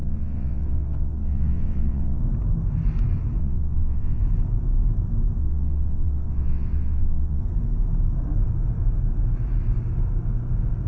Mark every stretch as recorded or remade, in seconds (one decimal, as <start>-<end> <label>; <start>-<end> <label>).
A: 0.0-2.2 remade; 2.2-3.4 recorded; 3.4-4.2 remade; 4.2-5.4 recorded; 5.4-7.4 remade; 7.4-10.9 recorded